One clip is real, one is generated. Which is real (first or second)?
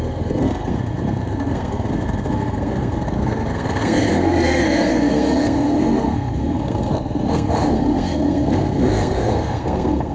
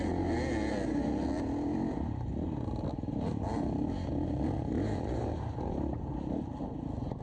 second